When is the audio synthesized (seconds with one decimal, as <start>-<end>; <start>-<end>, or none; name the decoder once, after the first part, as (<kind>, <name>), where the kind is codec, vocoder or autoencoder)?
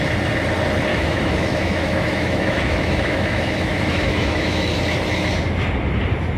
0.9-4.7 (autoencoder, DAC-VAE)